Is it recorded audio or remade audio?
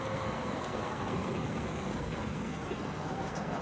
remade